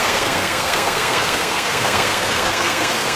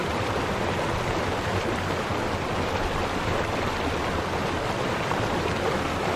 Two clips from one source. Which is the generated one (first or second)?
first